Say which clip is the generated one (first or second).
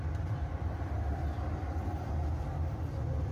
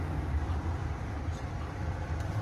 second